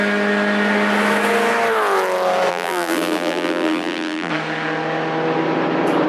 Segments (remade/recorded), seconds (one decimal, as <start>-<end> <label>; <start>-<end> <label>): 0.0-2.5 recorded; 2.5-4.3 remade; 4.3-6.1 recorded